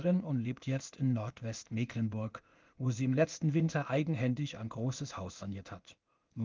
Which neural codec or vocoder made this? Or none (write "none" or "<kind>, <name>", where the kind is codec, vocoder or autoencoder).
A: codec, ZipCodec